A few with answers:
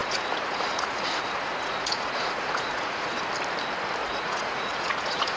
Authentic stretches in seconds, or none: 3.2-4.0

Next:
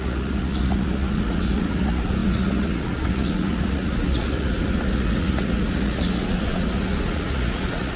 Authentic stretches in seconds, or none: none

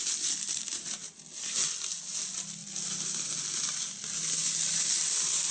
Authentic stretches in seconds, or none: 0.0-5.5

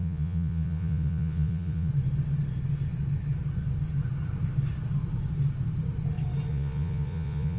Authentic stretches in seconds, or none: 1.9-6.5

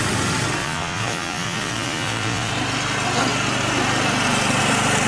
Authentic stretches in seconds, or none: 0.0-0.6; 2.5-5.1